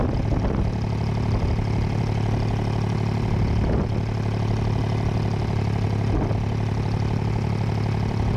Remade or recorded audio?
recorded